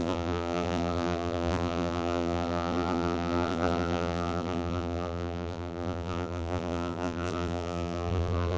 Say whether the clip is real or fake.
fake